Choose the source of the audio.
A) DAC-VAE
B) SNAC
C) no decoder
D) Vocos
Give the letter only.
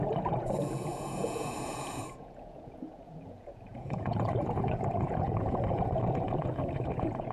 D